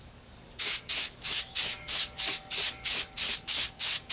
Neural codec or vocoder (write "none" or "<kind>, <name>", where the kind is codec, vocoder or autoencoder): codec, DAC